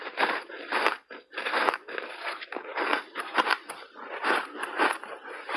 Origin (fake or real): fake